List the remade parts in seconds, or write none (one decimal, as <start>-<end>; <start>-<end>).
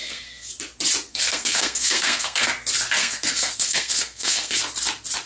0.0-0.5; 1.1-2.5; 3.0-4.6